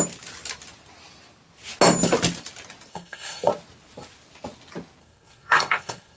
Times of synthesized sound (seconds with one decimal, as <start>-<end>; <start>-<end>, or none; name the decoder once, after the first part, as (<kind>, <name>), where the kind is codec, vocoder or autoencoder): 2.9-3.5 (codec, SNAC); 5.0-6.2